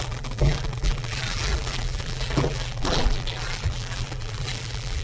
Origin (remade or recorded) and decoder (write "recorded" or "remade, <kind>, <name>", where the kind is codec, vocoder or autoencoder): remade, vocoder, BigVGAN v2